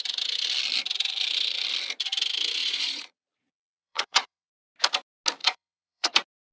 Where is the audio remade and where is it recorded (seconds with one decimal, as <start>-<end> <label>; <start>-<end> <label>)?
0.0-2.6 recorded; 2.6-4.5 remade; 4.5-5.4 recorded; 5.4-6.1 remade; 6.1-6.5 recorded